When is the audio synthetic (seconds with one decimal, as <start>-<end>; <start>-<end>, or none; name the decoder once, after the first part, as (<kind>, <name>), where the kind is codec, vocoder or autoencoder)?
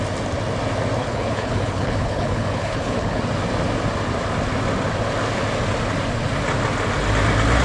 1.0-3.2 (codec, HILCodec)